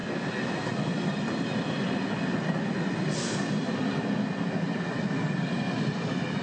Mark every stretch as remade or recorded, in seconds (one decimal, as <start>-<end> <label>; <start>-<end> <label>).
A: 0.0-6.4 recorded